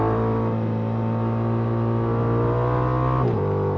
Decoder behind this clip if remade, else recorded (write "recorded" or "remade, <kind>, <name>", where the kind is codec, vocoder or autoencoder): recorded